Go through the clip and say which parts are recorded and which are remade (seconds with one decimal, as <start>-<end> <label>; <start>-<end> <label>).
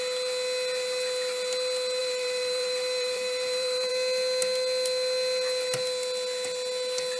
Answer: 0.0-2.0 recorded; 2.0-3.9 remade; 3.9-7.2 recorded